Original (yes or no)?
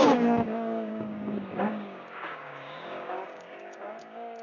no